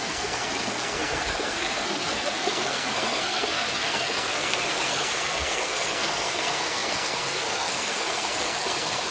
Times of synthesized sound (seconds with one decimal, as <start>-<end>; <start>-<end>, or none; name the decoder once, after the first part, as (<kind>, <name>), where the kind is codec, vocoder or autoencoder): 0.0-9.1 (codec, SNAC)